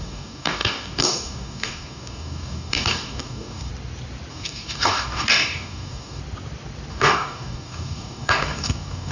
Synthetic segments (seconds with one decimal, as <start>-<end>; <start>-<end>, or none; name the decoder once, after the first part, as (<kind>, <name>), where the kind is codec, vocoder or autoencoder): 0.0-3.7 (codec, DAC); 4.3-6.2; 6.9-9.1